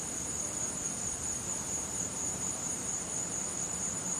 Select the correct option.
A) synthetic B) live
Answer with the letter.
A